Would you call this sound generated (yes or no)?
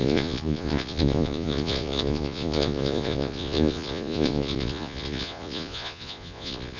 yes